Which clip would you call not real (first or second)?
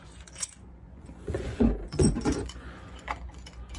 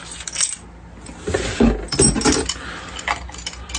first